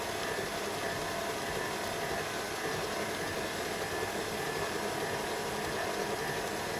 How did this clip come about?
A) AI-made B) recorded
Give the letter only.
B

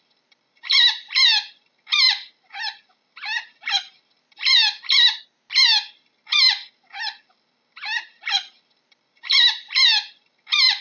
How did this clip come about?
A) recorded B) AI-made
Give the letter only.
A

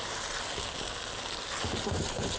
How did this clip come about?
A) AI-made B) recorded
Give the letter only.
B